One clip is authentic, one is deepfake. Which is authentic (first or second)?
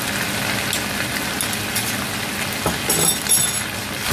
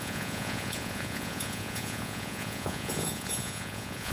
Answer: first